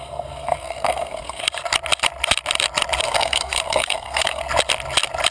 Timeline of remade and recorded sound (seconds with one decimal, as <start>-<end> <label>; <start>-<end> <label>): 0.0-1.4 remade; 1.4-3.0 recorded; 3.0-4.4 remade; 4.4-5.3 recorded